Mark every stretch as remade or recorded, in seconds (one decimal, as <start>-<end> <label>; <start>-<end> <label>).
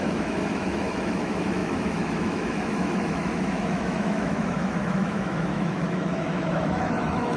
0.0-7.4 remade